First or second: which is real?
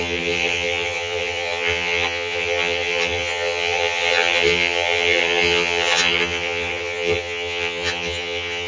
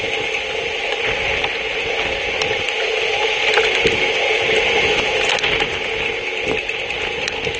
second